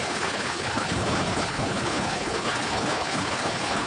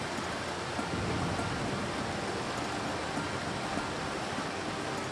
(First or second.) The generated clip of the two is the first